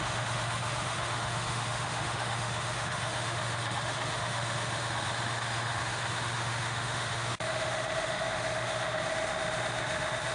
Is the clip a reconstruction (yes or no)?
yes